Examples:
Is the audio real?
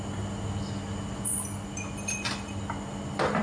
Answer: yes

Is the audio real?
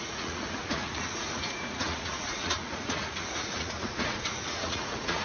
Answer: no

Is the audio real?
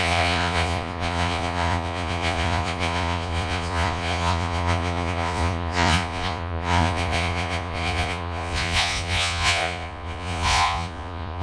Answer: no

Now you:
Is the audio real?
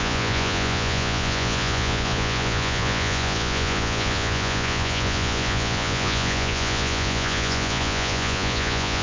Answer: no